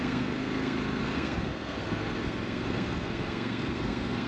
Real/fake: fake